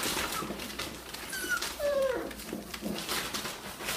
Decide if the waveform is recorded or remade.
remade